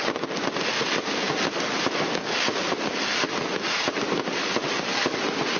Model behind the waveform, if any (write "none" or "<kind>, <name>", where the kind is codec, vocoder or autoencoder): none